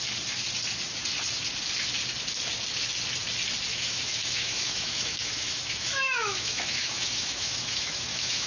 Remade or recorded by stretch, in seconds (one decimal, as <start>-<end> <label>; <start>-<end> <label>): 0.0-3.7 recorded; 3.7-8.5 remade